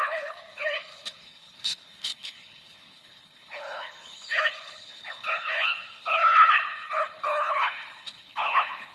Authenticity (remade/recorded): remade